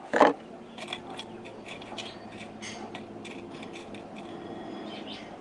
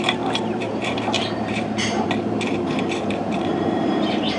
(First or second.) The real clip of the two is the first